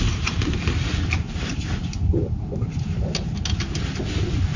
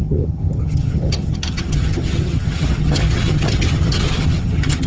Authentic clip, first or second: first